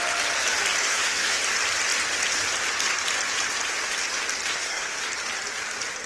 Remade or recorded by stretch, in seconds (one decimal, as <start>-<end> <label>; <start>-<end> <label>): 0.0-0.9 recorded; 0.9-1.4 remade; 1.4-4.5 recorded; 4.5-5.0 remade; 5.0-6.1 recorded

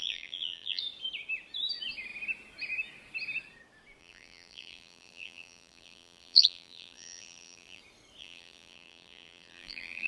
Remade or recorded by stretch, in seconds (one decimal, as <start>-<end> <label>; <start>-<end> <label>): 0.0-0.8 remade; 0.8-4.0 recorded; 4.0-7.8 remade; 7.8-8.2 recorded; 8.2-10.1 remade

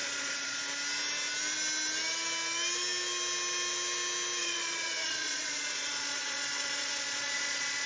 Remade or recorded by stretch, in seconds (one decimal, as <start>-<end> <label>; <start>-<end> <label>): 0.0-0.6 remade; 0.6-4.4 recorded; 4.4-7.9 remade